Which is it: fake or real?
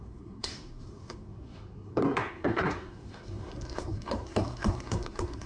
fake